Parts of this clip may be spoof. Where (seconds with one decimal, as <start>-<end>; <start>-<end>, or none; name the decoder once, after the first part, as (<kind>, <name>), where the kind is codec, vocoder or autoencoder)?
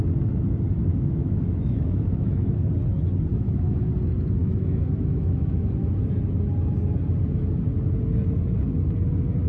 0.9-2.6 (autoencoder, DAC-VAE); 3.3-3.9; 4.4-5.7